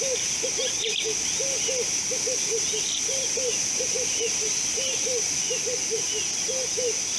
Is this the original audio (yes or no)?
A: yes